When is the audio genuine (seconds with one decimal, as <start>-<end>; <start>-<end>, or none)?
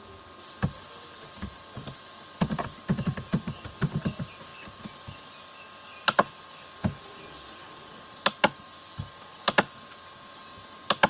0.0-11.1